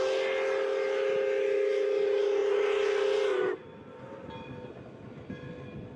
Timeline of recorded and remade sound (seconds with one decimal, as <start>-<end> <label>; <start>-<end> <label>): 0.0-6.0 recorded